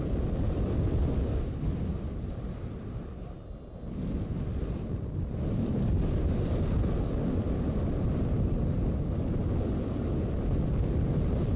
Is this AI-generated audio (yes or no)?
no